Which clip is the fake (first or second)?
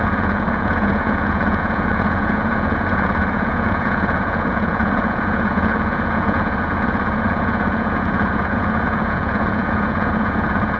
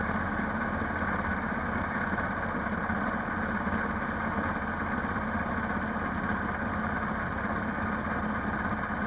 first